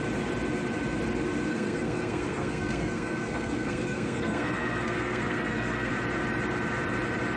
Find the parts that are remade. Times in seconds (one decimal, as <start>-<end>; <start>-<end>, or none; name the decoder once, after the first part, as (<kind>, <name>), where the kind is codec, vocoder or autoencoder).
1.5-5.9 (codec, SNAC)